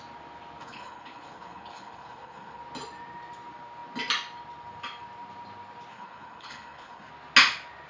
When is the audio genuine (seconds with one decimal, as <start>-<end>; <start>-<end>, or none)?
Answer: 0.0-0.6; 2.6-5.9; 7.1-7.9